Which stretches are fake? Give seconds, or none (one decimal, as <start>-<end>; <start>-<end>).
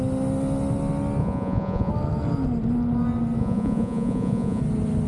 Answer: 1.2-1.9; 3.4-4.6